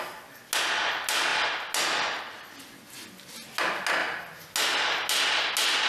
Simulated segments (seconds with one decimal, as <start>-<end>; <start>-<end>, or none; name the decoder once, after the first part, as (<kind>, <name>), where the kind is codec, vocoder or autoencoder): none